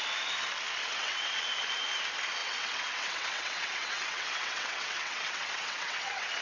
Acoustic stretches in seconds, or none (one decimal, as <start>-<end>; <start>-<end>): 0.0-0.8; 1.4-2.4